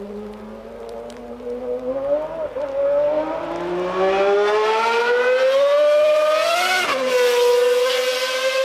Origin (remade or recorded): recorded